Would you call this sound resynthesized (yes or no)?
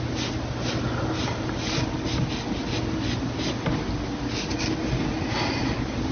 no